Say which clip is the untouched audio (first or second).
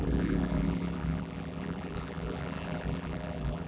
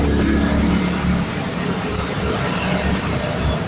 second